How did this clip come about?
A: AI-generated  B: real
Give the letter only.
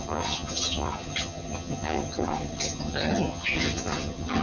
A